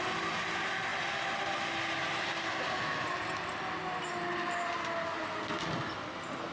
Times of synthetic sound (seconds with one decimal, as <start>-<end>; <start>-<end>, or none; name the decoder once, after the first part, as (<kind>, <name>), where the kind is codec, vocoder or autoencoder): none